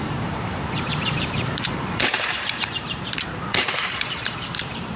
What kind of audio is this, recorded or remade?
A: remade